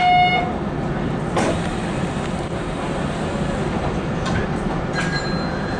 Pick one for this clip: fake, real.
real